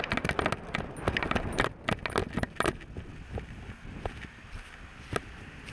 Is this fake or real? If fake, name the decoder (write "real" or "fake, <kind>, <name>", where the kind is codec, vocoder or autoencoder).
real